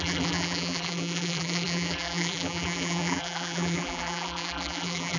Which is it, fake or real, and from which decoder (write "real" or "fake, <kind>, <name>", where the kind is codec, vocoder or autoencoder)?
fake, vocoder, BigVGAN v2